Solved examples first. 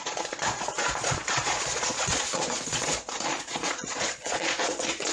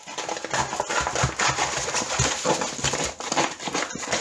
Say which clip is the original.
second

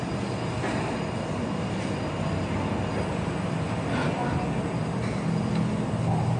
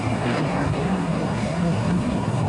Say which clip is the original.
first